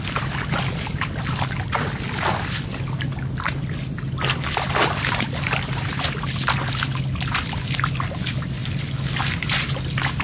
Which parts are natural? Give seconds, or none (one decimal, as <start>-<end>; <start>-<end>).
0.0-10.2